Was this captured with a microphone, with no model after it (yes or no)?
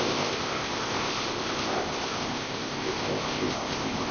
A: no